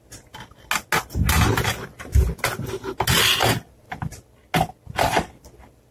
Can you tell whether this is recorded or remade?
recorded